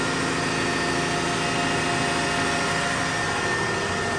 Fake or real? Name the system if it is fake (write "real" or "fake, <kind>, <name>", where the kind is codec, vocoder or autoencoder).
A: real